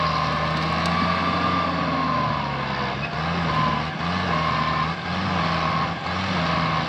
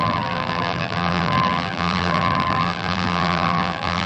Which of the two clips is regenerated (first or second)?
second